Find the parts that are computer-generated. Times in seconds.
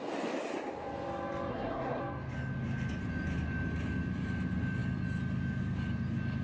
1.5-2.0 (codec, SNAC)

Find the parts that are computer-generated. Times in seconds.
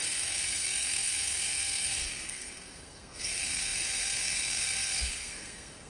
0.0-5.9 (codec, SNAC)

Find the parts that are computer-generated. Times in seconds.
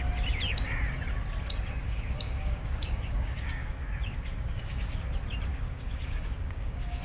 1.8-3.9 (codec, DAC); 4.3-5.0; 5.5-7.0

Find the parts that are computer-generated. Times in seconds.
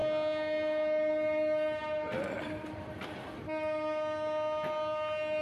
none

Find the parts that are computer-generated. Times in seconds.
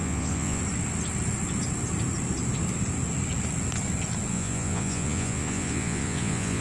0.0-0.6 (vocoder, Vocos); 4.3-6.6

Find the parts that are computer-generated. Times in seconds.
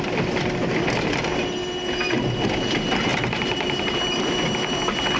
3.1-4.3 (vocoder, BigVGAN v2)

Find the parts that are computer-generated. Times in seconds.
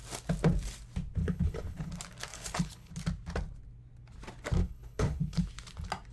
1.2-1.9 (codec, HILCodec); 2.3-2.9; 4.6-5.4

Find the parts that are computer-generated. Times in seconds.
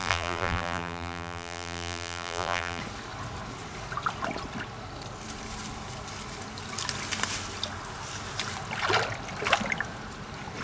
0.0-2.8 (vocoder, BigVGAN v2)